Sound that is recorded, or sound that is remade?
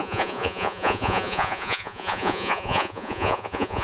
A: remade